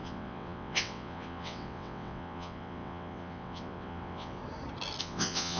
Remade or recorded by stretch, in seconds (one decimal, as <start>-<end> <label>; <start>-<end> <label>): 0.0-4.4 remade; 4.4-5.0 recorded; 5.0-5.6 remade